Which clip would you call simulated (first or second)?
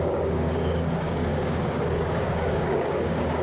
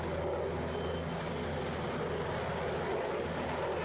first